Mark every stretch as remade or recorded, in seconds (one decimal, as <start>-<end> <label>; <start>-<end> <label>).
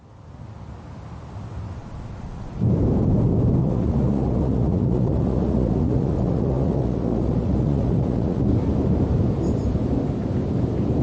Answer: 0.0-1.8 recorded; 1.8-2.6 remade; 2.6-3.6 recorded; 3.6-8.4 remade; 8.4-11.0 recorded